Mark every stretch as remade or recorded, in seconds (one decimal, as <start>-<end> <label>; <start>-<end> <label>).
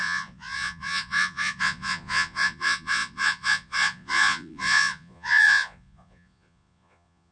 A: 0.0-7.3 remade